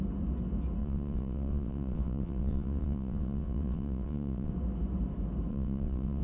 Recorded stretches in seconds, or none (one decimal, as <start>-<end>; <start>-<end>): 0.0-0.8; 4.5-5.5